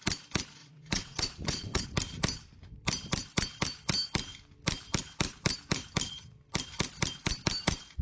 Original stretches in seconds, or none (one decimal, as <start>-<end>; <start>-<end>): 0.0-0.6; 1.8-8.0